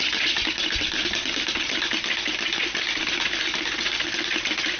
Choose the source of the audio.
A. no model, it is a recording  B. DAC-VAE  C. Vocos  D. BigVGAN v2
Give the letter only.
A